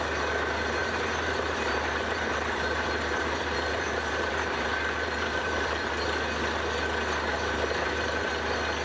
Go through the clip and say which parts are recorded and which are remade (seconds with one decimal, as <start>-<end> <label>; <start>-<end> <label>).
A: 0.0-0.8 recorded; 0.8-5.9 remade; 5.9-7.3 recorded; 7.3-8.3 remade; 8.3-8.8 recorded